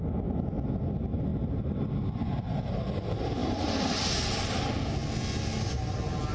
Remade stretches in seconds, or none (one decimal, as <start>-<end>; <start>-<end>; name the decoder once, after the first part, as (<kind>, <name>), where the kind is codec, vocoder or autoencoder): none